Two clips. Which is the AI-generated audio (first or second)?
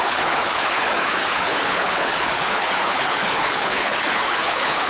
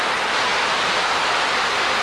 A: first